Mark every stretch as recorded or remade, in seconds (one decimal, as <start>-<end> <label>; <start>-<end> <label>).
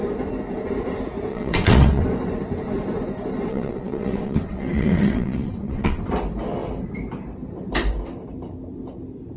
0.0-1.3 recorded; 1.3-2.0 remade; 2.0-3.5 recorded; 3.5-6.1 remade; 6.1-9.4 recorded